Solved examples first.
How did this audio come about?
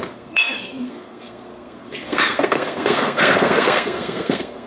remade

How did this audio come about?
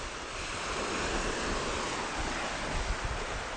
recorded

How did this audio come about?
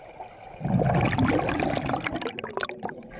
recorded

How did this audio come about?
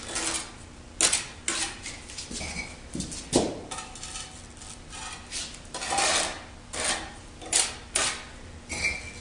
recorded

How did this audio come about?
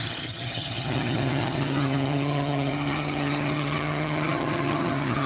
remade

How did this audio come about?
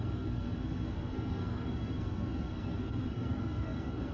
remade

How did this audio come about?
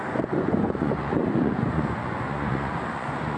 remade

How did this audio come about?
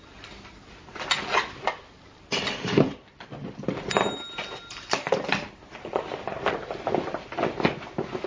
recorded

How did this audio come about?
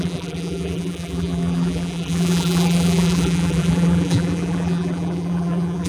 remade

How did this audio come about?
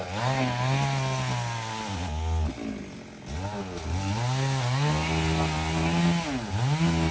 recorded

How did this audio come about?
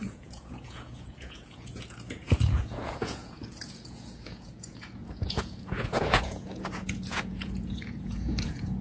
remade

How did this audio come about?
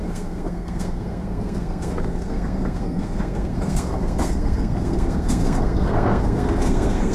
remade